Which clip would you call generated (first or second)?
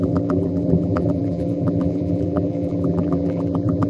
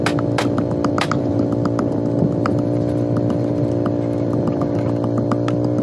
first